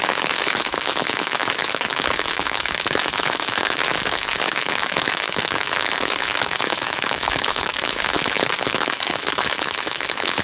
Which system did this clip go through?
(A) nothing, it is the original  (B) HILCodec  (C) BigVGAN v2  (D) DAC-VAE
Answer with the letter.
D